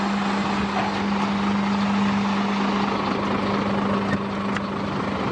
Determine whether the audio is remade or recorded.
recorded